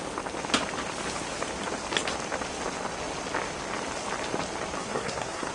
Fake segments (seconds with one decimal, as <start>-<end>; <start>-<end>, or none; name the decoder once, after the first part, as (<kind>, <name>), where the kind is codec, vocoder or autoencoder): 4.8-5.5 (codec, SNAC)

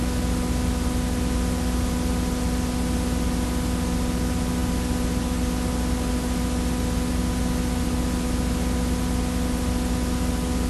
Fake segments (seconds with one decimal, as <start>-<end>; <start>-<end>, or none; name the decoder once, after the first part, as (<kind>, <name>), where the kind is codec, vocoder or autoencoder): none

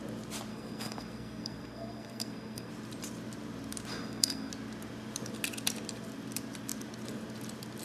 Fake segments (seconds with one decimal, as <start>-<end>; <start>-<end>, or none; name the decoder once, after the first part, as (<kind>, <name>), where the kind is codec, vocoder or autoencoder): 0.5-2.7 (codec, SNAC); 3.9-4.5

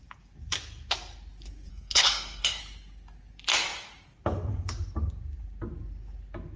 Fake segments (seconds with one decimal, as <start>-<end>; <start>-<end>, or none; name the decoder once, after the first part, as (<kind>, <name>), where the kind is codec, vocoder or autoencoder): 1.7-2.6 (codec, SNAC)

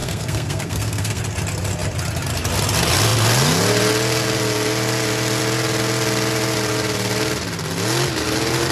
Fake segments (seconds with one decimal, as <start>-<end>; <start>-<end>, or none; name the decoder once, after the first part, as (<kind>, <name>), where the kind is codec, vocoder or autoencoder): 0.0-1.2 (codec, SNAC)